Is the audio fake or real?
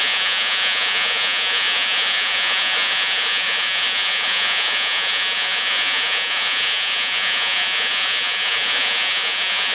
fake